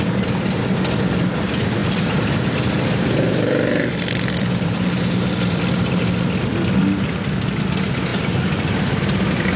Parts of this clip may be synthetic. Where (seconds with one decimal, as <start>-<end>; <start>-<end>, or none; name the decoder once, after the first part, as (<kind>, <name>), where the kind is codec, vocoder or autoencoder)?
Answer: 1.8-6.0 (vocoder, BigVGAN v2); 8.1-8.8